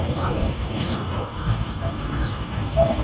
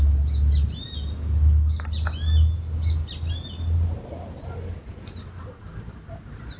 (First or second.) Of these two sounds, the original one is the second